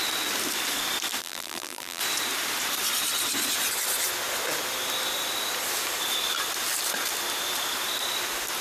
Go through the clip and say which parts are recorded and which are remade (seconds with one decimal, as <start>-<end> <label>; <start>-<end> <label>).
0.0-1.2 recorded; 1.2-2.0 remade; 2.0-8.6 recorded